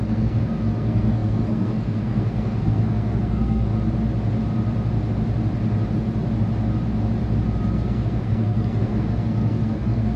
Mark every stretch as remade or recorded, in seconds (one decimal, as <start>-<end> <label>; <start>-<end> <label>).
0.0-3.7 remade; 3.7-7.7 recorded; 7.7-10.2 remade